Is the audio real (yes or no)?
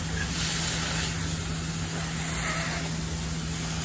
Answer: yes